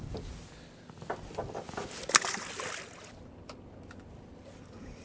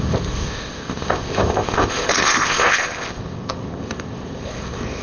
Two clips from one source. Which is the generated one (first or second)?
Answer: second